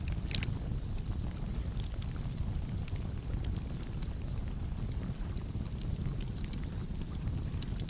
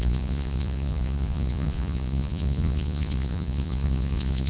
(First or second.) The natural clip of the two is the first